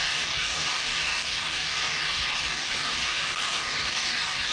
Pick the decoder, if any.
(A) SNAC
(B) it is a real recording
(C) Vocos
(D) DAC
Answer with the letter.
D